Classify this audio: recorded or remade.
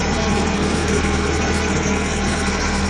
remade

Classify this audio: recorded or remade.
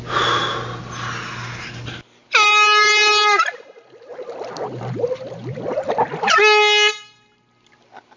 recorded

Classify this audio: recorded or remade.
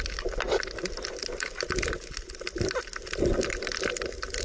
recorded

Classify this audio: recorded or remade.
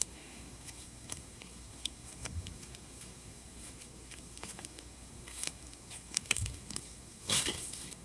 remade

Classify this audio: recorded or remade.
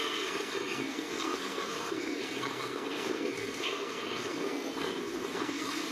remade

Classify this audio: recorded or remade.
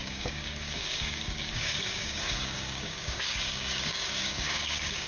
remade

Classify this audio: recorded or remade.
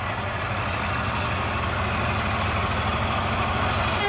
recorded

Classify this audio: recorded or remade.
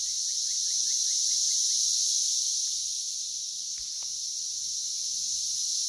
recorded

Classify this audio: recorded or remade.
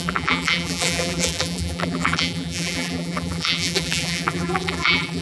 remade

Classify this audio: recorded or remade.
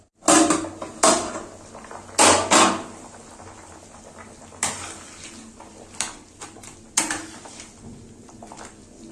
recorded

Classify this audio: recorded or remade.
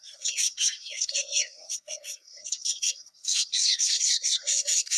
remade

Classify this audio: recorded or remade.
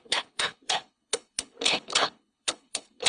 remade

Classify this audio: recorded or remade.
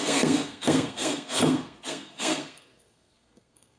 remade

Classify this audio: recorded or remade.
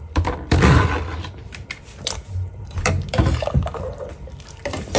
remade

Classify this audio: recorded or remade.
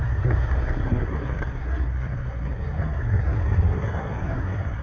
remade